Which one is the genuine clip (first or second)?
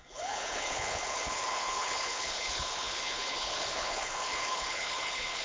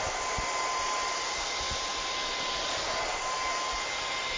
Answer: second